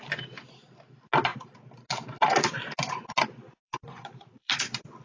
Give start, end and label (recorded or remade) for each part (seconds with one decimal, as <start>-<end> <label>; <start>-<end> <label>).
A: 0.0-3.6 recorded; 3.6-4.5 remade; 4.5-5.0 recorded